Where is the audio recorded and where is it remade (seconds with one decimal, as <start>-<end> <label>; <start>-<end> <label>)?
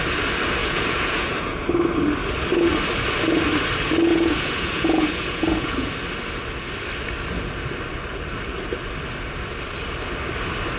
0.0-0.6 recorded; 0.6-1.6 remade; 1.6-4.1 recorded; 4.1-5.9 remade; 5.9-10.8 recorded